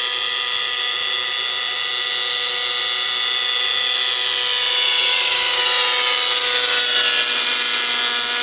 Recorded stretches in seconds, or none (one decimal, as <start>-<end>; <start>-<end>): 0.0-5.1; 5.6-8.4

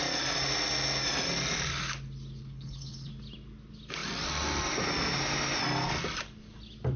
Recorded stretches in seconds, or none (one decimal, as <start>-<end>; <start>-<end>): 0.0-2.4; 3.1-7.0

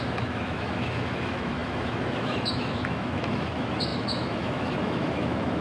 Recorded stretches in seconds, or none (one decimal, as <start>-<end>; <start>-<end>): none

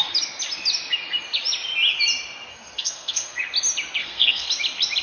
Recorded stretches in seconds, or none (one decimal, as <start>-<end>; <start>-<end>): 0.0-2.5; 3.4-4.0; 4.5-5.0

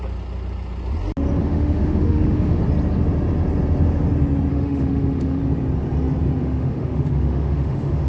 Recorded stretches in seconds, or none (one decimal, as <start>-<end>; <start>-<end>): 0.0-1.4; 2.6-4.5; 5.4-6.4

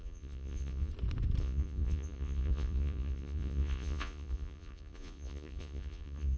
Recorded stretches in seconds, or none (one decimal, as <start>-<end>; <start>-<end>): 0.9-1.4

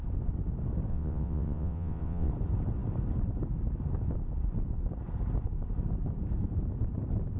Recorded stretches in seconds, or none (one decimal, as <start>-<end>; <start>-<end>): 0.0-0.9; 2.3-7.4